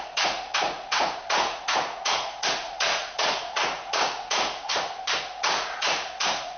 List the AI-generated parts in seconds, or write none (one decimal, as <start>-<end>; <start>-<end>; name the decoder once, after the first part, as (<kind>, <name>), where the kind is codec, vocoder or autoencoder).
0.0-4.7 (vocoder, Vocos); 5.2-6.6